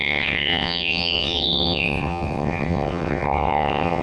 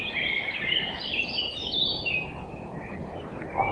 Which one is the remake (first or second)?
first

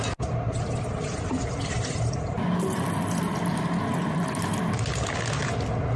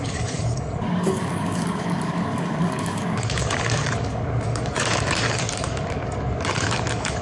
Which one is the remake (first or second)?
second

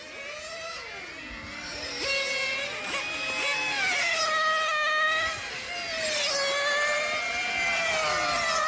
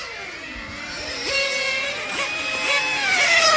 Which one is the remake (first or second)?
second